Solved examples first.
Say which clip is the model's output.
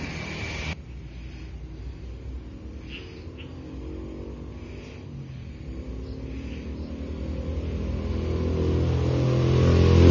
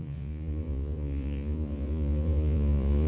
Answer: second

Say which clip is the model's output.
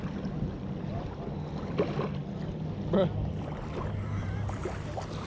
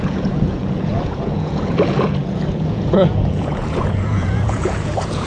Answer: second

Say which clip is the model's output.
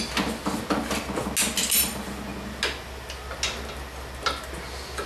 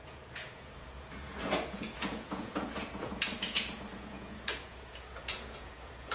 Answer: second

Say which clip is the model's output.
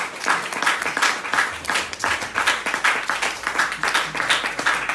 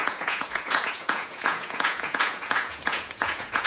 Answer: second